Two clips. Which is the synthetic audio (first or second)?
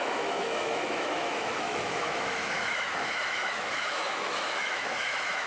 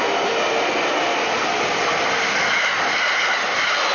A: first